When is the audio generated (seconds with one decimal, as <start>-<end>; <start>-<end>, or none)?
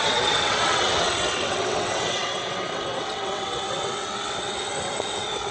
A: 0.0-5.5